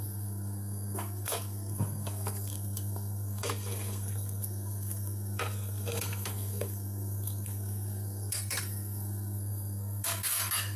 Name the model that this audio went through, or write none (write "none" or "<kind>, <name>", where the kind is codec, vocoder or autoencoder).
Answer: codec, SNAC